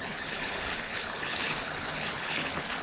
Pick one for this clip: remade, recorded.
remade